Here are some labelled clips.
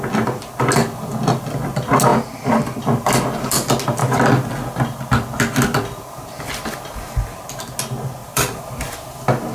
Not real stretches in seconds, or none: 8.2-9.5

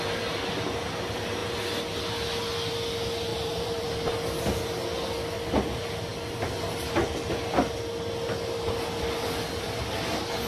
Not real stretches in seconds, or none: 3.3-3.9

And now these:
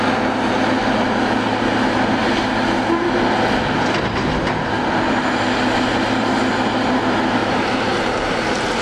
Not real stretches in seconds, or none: 7.4-8.8

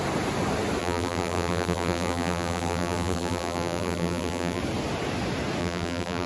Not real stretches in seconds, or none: 0.8-4.6; 5.6-6.3